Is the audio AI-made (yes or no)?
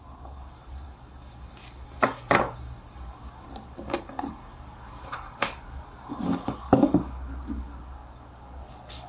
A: yes